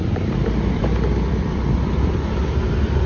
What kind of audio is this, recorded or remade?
remade